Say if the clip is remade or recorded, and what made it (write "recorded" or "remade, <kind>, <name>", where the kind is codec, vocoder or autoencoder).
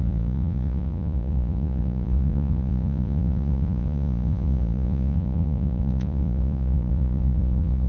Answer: remade, vocoder, Vocos